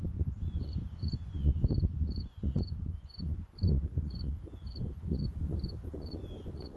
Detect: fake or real fake